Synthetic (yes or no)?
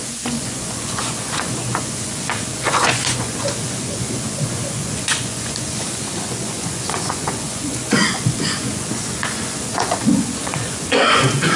yes